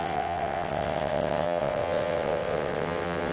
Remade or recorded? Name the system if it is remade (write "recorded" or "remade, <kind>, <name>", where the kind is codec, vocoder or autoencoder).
remade, vocoder, WaveNeXt